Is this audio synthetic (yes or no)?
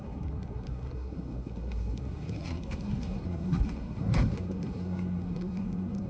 yes